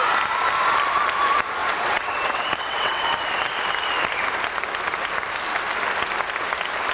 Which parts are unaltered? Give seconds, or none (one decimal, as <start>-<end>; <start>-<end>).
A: 0.0-1.6; 3.0-6.9